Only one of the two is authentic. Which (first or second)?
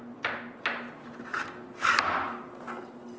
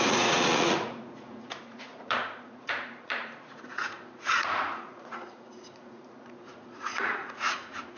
first